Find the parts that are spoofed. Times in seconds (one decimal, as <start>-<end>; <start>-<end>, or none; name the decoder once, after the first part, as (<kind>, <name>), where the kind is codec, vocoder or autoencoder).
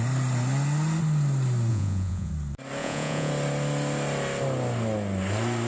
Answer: 1.7-2.3 (vocoder, Vocos); 2.8-3.3